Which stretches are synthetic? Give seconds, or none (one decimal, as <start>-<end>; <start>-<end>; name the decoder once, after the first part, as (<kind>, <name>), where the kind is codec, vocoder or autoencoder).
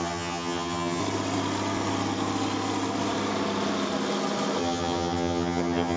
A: 0.0-1.0 (vocoder, HiFi-GAN); 4.6-6.0